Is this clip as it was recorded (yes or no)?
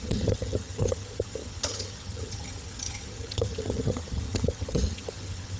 no